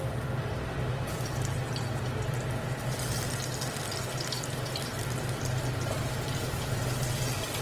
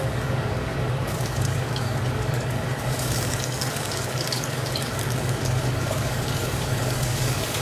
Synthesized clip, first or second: second